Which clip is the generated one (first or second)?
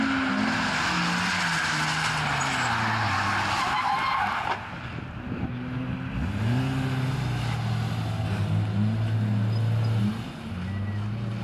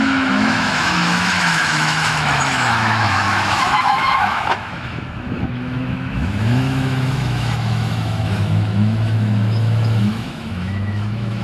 second